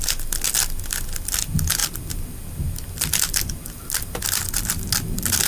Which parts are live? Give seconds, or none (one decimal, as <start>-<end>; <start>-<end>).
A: 0.0-5.5